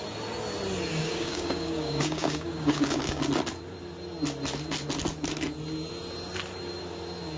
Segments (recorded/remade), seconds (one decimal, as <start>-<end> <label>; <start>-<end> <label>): 0.0-0.9 recorded; 0.9-3.2 remade; 3.2-7.4 recorded